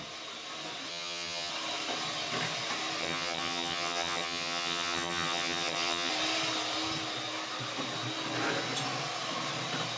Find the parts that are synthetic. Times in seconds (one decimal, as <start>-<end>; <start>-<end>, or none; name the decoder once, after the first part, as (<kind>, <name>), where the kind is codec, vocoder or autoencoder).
0.9-1.5 (vocoder, HiFi-GAN); 3.0-6.1